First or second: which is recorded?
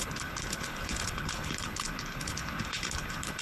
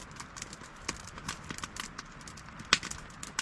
second